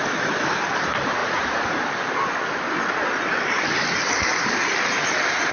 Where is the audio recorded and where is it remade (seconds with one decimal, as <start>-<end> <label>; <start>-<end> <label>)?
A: 0.0-1.2 recorded; 1.2-1.7 remade; 1.7-5.5 recorded